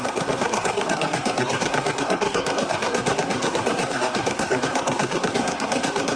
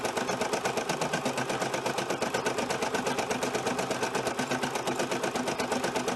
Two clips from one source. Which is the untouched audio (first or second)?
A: second